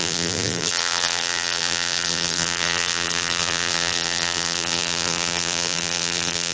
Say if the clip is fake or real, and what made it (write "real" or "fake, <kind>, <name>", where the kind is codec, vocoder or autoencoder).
fake, vocoder, BigVGAN v2